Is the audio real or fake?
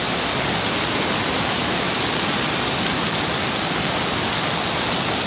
real